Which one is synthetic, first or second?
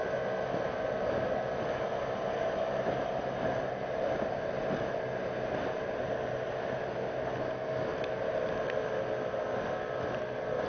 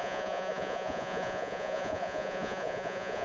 second